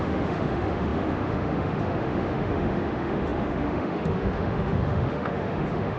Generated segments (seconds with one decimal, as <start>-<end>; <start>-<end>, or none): 0.0-6.0